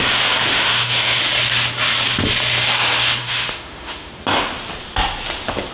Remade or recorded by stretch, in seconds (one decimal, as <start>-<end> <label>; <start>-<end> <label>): 0.0-0.5 recorded; 0.5-1.2 remade; 1.2-3.2 recorded; 3.2-4.1 remade; 4.1-5.7 recorded